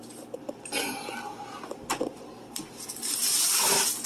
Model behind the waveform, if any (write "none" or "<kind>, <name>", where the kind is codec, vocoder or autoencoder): none